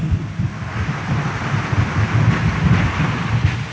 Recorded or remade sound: recorded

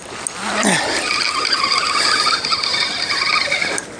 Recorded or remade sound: recorded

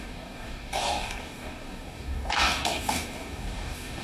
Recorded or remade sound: remade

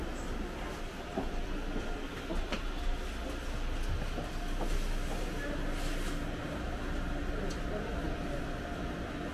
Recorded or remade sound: recorded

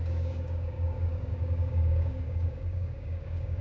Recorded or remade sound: remade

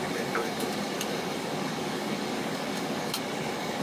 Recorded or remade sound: remade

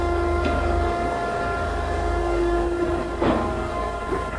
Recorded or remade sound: remade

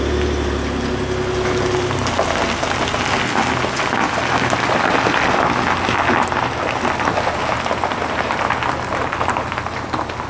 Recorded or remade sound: recorded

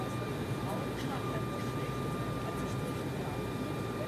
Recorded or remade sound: recorded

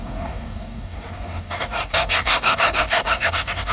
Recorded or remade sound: remade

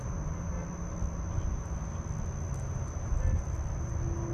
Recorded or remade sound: recorded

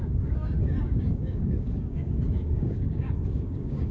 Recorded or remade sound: remade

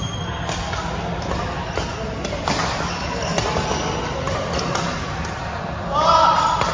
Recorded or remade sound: recorded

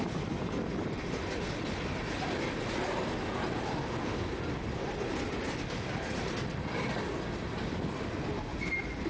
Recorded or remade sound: recorded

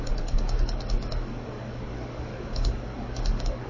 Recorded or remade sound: remade